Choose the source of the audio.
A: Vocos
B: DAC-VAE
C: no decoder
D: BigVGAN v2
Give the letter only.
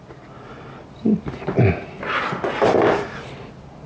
C